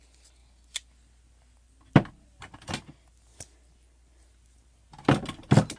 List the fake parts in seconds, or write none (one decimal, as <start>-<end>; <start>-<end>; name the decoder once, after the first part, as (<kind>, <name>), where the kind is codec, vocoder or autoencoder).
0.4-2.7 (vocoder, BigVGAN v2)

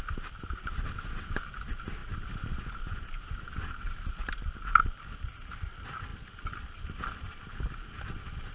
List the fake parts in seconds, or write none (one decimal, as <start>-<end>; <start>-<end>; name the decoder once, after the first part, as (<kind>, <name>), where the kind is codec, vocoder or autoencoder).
2.0-3.8 (vocoder, BigVGAN v2); 6.1-8.0

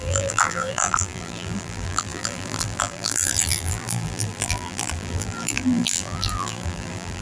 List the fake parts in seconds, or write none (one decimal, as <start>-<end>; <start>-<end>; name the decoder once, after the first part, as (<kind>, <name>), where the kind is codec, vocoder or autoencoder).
0.0-7.2 (vocoder, BigVGAN v2)

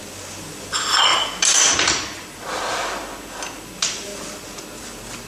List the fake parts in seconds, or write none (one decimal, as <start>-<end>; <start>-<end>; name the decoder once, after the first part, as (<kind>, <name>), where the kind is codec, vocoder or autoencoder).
none

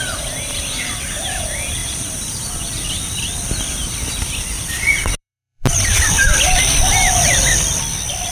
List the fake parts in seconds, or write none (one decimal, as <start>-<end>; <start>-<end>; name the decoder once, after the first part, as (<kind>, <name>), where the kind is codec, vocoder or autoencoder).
1.8-2.5 (vocoder, BigVGAN v2); 5.2-8.3

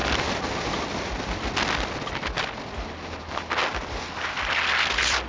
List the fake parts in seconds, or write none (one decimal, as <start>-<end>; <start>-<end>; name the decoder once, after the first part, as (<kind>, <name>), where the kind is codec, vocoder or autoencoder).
none

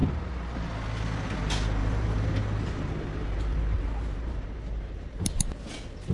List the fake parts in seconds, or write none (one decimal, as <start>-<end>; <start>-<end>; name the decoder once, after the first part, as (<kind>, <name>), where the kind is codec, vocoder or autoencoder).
0.0-0.6 (vocoder, BigVGAN v2); 1.8-5.5